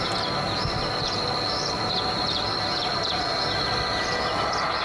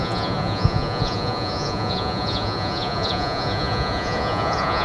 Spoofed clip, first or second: second